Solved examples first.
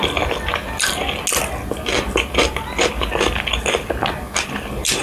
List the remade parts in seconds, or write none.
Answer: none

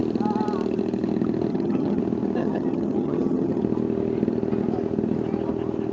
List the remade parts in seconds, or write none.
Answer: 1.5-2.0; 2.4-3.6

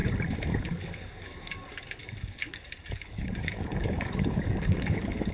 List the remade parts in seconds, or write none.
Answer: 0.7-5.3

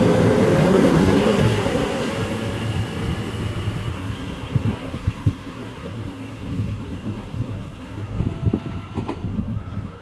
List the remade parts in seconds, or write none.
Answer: 0.6-2.1; 3.9-8.2; 9.3-10.0

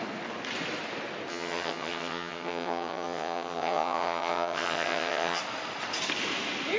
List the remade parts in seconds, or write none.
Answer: 1.3-5.4

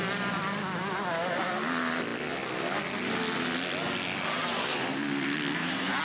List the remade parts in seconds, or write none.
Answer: none

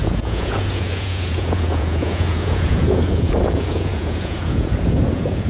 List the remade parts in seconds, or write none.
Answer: 0.0-5.5